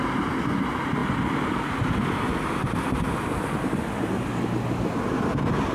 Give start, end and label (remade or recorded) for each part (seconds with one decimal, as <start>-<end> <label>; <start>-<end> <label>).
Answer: 0.0-5.7 recorded